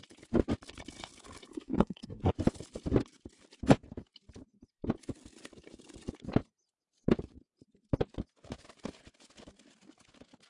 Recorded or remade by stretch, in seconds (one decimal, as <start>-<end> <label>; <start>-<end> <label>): 0.0-1.5 recorded; 1.5-2.3 remade; 2.3-10.5 recorded